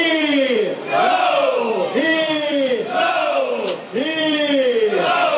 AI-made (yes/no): yes